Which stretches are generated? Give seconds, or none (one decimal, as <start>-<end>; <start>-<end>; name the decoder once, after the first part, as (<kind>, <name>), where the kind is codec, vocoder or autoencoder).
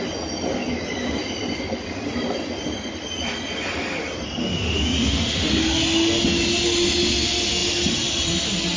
4.4-5.5 (autoencoder, DAC-VAE)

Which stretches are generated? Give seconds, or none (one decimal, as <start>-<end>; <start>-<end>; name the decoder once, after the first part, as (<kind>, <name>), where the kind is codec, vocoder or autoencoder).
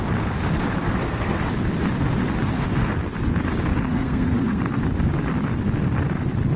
0.8-1.4 (codec, SNAC); 3.9-4.8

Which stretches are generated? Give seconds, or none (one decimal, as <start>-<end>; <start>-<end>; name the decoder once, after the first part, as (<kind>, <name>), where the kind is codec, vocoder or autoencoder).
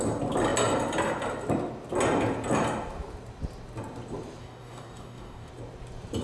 4.4-5.5 (codec, DAC)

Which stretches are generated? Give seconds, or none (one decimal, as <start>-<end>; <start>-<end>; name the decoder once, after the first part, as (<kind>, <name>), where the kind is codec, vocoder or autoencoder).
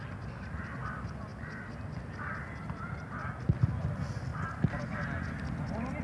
none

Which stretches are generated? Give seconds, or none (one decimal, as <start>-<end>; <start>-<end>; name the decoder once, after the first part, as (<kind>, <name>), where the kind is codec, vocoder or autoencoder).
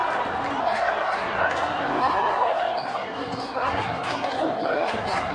0.6-5.3 (codec, SNAC)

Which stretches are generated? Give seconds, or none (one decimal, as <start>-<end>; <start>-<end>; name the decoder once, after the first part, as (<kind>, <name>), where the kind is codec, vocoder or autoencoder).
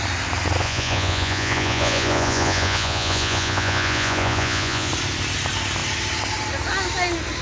0.6-4.9 (vocoder, Vocos)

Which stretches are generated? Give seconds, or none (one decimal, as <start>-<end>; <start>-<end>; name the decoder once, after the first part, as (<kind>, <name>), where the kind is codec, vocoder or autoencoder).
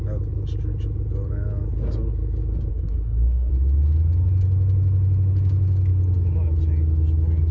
2.7-3.5 (codec, SNAC)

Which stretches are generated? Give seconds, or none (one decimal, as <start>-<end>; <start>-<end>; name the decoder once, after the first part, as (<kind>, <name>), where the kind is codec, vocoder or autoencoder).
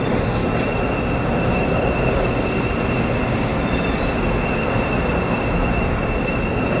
3.5-4.5 (vocoder, BigVGAN v2)